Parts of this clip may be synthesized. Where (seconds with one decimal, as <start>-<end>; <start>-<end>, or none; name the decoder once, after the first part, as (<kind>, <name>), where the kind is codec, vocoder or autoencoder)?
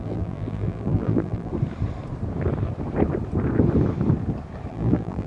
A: 0.0-1.5 (vocoder, BigVGAN v2); 4.7-5.3